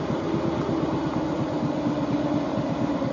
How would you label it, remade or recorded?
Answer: recorded